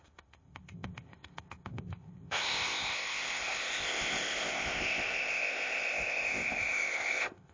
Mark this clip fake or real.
fake